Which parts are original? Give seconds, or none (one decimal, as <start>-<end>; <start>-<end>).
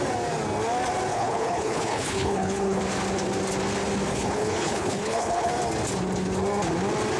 0.0-1.1; 2.8-4.1; 5.5-7.2